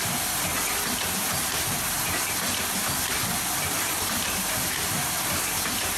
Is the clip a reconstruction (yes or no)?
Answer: no